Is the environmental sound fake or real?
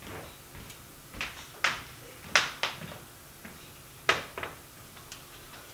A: real